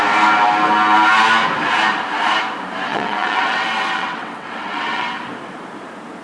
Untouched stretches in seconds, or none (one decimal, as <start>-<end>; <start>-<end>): 0.0-2.9; 5.1-6.2